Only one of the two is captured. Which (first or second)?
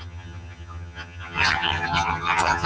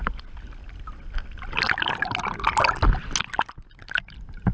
second